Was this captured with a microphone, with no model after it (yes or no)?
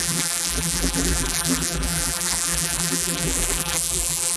no